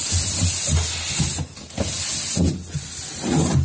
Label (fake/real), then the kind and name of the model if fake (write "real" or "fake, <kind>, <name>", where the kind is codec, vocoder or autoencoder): real